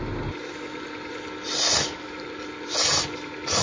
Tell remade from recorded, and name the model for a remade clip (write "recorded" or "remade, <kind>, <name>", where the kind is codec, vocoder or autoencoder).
recorded